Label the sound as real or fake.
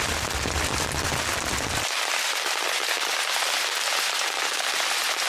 real